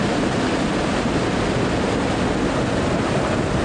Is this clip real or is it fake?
real